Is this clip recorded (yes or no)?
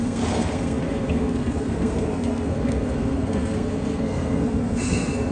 no